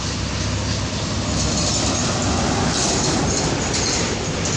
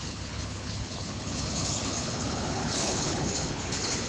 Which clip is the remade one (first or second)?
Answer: second